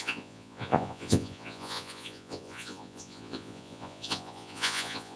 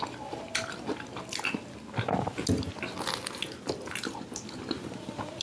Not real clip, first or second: first